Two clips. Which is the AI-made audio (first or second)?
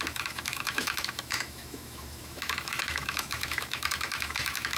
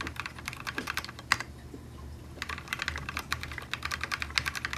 first